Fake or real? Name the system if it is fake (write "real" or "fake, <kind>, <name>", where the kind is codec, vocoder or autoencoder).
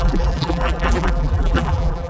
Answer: fake, vocoder, BigVGAN v2